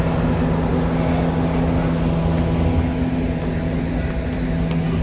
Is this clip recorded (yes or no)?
yes